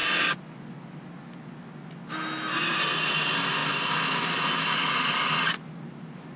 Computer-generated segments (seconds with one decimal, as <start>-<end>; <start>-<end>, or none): none